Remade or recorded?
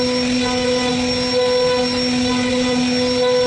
recorded